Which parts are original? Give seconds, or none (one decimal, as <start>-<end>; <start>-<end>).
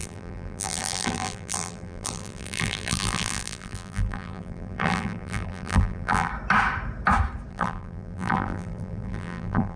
6.3-7.5